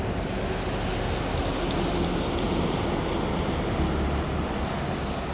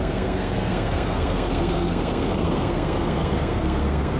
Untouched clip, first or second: first